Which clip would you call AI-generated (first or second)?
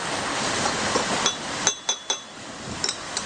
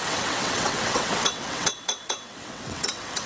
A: second